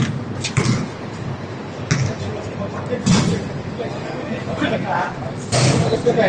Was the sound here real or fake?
real